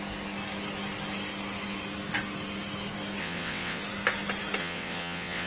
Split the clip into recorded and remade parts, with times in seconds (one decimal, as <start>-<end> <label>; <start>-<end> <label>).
0.0-3.2 recorded; 3.2-3.8 remade; 3.8-4.6 recorded; 4.6-5.5 remade

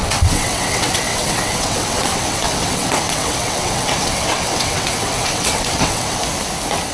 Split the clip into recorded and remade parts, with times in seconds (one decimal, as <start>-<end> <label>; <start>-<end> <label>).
0.0-6.2 remade; 6.2-6.9 recorded

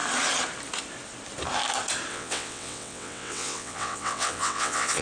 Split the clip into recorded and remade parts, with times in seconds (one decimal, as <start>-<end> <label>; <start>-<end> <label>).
0.0-2.1 recorded; 2.1-5.0 remade

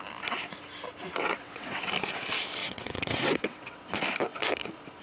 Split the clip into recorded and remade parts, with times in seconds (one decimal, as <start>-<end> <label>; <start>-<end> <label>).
0.0-1.2 recorded; 1.2-1.9 remade; 1.9-2.6 recorded; 2.6-3.9 remade; 3.9-5.0 recorded

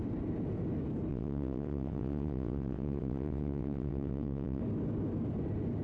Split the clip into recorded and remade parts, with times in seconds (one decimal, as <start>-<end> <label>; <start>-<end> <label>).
0.0-1.1 recorded; 1.1-4.6 remade; 4.6-5.8 recorded

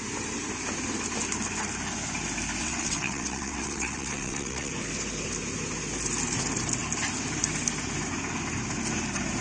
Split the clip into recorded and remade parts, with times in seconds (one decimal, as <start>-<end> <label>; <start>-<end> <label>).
0.0-2.6 recorded; 2.6-4.7 remade; 4.7-9.4 recorded

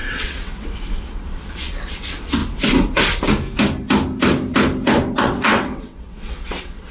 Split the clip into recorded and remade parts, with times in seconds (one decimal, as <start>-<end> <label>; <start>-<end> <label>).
0.0-2.4 remade; 2.4-5.2 recorded; 5.2-6.9 remade

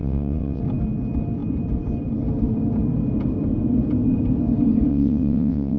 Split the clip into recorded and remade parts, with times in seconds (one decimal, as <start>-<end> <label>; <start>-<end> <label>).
0.0-0.6 remade; 0.6-4.9 recorded; 4.9-5.8 remade